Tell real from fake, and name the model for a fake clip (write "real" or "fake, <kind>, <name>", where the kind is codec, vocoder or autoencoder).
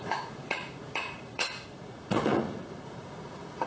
fake, vocoder, Vocos